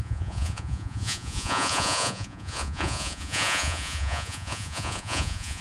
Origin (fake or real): fake